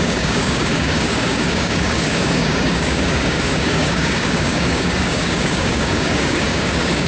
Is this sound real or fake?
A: fake